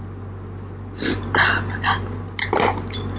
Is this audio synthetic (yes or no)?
no